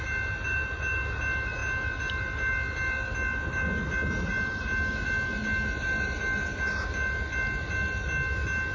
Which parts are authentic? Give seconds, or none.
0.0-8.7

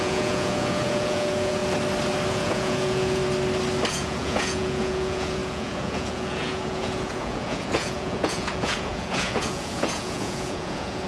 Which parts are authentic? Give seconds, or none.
1.6-2.3; 3.2-3.9

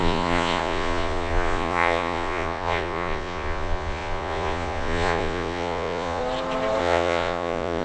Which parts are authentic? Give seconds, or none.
6.2-6.8

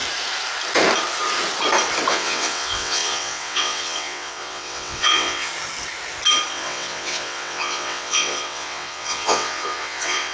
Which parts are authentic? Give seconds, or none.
0.0-2.1; 5.5-6.5

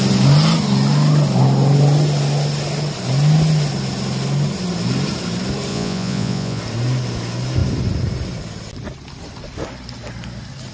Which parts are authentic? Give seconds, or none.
0.0-5.7; 6.6-10.7

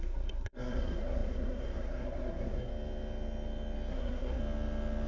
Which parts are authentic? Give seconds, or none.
2.7-3.9; 4.4-5.1

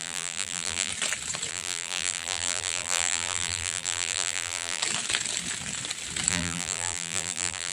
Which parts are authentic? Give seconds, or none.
0.9-1.5; 4.8-6.3